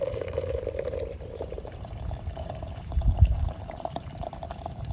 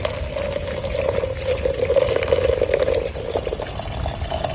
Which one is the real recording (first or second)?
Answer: second